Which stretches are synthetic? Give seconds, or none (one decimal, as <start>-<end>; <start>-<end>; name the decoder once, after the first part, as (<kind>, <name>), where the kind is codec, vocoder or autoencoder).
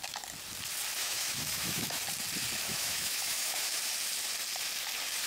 1.0-2.0 (autoencoder, DAC-VAE); 2.7-3.8